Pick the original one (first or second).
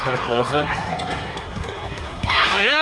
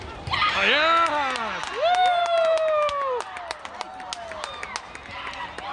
second